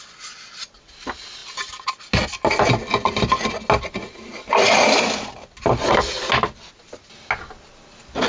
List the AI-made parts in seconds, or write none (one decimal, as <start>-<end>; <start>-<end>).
none